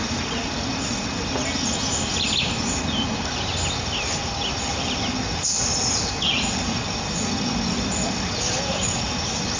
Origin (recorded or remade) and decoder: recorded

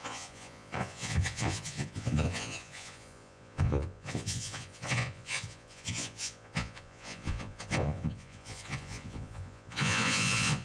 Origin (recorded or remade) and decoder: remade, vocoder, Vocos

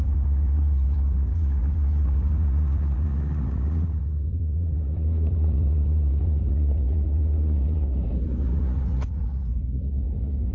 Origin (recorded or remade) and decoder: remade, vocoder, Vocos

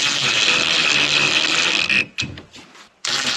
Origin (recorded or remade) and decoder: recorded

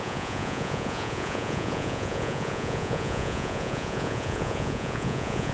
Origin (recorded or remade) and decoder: remade, vocoder, Vocos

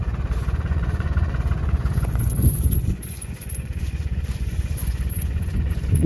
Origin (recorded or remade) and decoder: remade, vocoder, Vocos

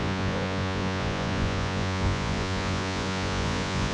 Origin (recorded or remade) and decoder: remade, vocoder, Vocos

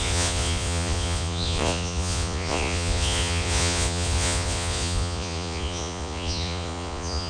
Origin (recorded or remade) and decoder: remade, vocoder, Vocos